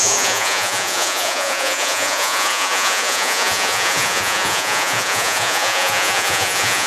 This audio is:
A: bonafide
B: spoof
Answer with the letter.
B